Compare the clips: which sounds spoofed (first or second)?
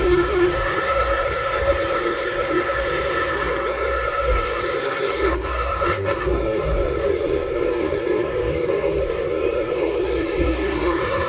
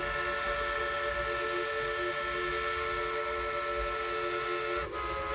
first